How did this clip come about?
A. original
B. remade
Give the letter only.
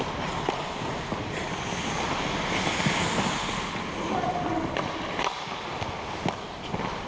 A